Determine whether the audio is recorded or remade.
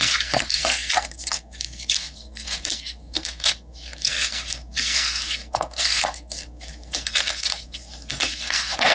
remade